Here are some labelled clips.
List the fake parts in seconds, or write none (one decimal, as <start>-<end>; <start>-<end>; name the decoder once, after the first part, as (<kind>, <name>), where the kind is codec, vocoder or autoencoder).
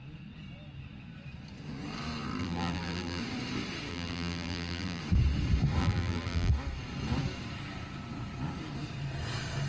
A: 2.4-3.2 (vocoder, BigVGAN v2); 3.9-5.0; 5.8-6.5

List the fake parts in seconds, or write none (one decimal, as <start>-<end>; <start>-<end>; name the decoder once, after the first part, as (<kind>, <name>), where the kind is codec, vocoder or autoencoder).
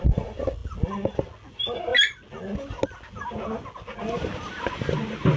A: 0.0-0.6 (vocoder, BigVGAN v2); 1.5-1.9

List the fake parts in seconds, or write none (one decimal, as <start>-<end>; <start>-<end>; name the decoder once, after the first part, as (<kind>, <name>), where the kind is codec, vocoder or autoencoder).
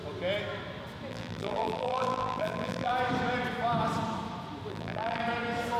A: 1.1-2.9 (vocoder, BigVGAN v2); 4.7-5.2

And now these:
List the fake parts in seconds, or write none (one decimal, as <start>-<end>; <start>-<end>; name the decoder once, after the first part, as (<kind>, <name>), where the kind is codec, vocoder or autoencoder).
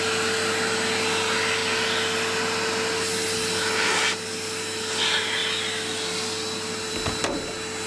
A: none